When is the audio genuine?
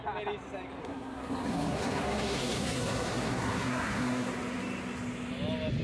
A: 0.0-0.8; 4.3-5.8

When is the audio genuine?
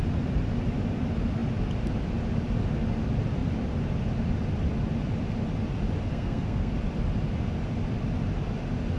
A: 0.0-6.1; 6.7-9.0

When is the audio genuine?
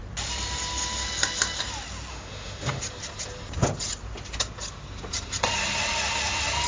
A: 0.0-2.1; 2.8-6.7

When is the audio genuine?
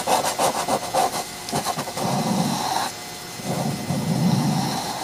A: 0.0-1.0; 2.0-5.0